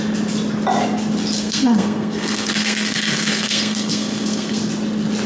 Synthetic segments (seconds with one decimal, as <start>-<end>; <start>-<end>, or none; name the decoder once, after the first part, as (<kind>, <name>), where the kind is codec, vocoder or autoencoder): 1.4-4.6 (codec, SNAC)

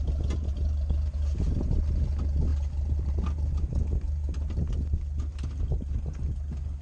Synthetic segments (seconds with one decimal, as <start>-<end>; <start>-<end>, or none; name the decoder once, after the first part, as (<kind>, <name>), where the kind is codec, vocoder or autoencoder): none

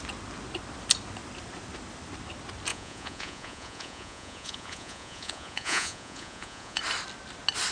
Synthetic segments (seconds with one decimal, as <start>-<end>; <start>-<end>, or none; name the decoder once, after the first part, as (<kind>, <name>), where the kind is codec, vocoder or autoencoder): 2.7-6.8 (vocoder, Vocos)